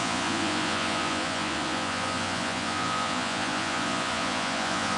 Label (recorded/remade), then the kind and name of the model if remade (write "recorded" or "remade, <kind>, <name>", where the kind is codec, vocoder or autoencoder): remade, vocoder, Vocos